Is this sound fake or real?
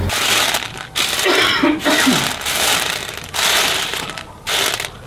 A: real